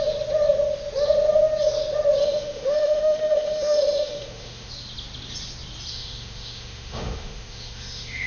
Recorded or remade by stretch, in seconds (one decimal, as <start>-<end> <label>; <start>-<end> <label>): 0.0-2.2 recorded; 2.2-4.7 remade; 4.7-5.9 recorded; 5.9-8.3 remade